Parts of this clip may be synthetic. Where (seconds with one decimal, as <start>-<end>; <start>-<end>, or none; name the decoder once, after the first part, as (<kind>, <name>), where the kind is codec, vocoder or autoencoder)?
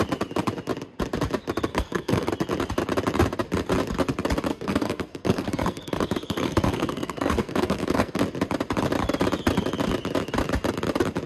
1.7-2.3 (codec, SNAC); 4.5-8.2